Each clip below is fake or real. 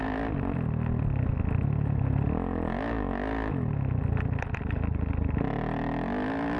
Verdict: real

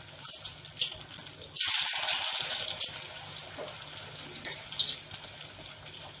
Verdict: real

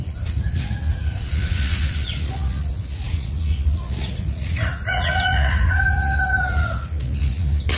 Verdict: fake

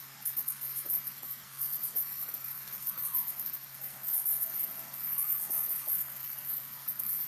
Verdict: fake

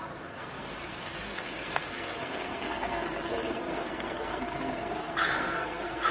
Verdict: fake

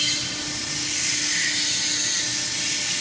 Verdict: real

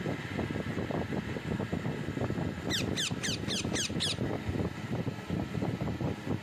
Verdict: real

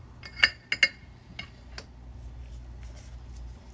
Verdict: real